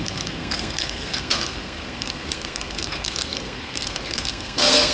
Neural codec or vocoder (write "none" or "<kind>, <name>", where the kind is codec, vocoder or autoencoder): codec, SNAC